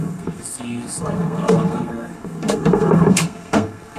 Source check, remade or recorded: remade